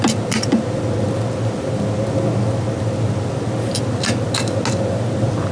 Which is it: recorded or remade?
recorded